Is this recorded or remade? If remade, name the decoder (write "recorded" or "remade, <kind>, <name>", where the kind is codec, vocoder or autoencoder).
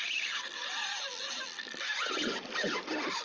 remade, vocoder, BigVGAN v2